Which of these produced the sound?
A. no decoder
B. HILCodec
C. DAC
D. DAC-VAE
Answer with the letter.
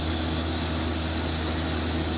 A